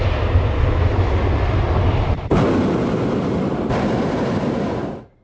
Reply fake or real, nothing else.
real